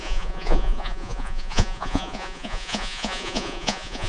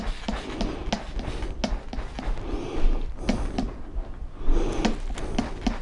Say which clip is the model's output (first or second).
first